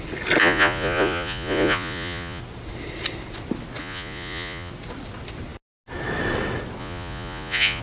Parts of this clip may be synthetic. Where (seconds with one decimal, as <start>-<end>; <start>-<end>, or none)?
0.4-2.4; 3.8-4.7; 6.8-7.8

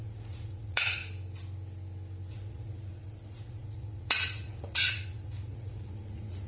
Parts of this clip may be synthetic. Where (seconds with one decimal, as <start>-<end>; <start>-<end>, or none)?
0.0-1.0; 2.3-6.5

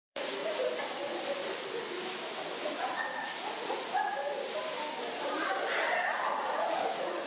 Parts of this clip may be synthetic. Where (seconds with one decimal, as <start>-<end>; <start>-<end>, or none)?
0.0-0.4; 2.6-4.2; 6.1-7.3

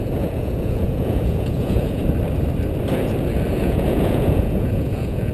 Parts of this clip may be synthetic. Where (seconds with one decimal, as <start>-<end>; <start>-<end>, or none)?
0.0-2.0; 3.5-5.3

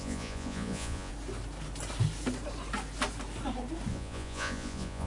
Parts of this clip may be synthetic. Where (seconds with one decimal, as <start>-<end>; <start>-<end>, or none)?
0.0-1.1; 3.9-5.1

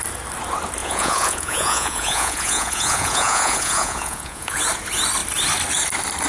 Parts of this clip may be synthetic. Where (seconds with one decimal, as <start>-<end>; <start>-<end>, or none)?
0.8-4.6

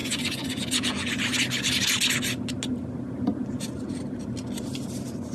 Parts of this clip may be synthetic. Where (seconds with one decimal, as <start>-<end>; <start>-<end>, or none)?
0.0-0.6